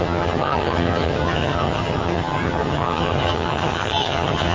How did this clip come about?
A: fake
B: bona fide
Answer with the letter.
A